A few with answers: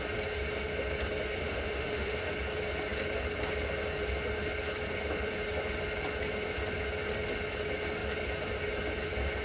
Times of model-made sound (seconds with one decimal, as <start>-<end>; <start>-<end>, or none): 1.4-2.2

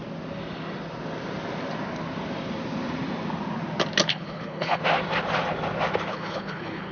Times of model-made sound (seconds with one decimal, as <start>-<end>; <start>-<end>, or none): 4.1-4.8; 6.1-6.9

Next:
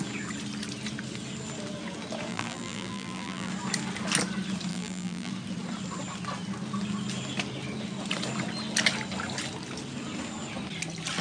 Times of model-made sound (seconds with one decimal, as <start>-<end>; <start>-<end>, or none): 2.3-3.5; 4.7-5.3

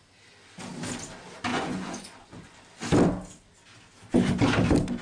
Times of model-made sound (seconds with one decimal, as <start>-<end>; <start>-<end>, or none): 1.5-2.6

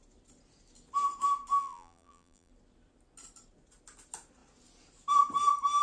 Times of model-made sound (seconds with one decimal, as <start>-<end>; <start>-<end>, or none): 1.6-2.5